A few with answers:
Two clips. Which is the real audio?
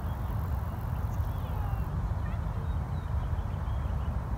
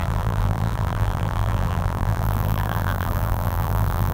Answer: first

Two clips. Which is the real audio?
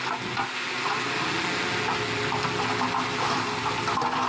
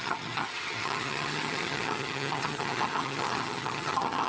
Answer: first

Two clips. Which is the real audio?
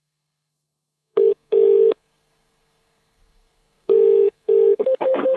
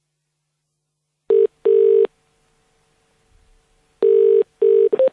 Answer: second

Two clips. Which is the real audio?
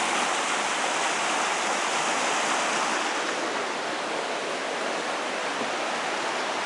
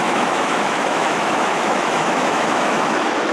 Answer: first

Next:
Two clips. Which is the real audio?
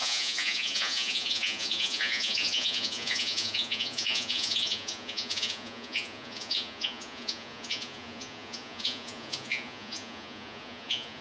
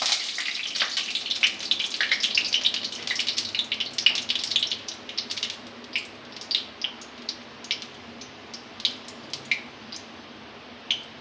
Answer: second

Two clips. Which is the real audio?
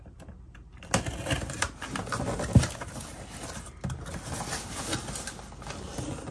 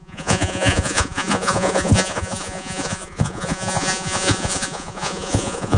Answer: first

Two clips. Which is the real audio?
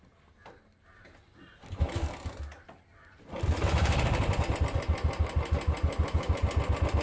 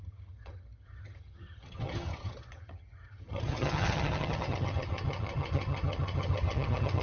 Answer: first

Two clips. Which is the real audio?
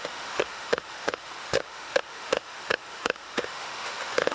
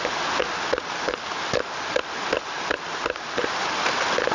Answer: second